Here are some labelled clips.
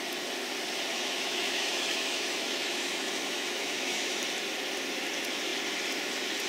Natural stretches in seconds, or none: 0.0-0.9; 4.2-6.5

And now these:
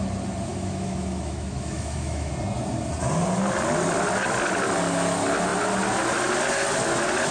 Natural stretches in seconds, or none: 0.0-0.5; 2.3-7.3

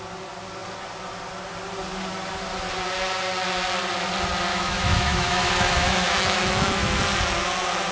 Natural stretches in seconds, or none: 0.0-4.5; 7.0-7.9

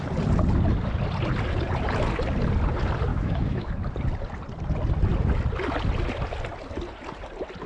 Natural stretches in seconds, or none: 0.0-3.1; 3.8-7.7

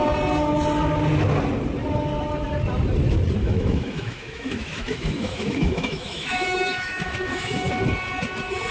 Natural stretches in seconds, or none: 0.0-3.4; 7.7-8.7

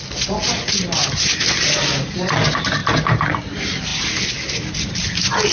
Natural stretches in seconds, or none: 0.0-5.5

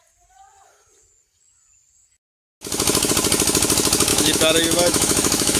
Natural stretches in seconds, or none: 0.0-4.1